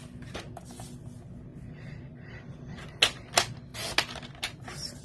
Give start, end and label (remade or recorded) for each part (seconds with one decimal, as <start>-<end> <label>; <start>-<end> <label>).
0.0-1.5 recorded; 1.5-2.6 remade; 2.6-5.0 recorded